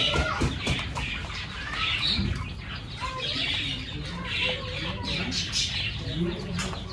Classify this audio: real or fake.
real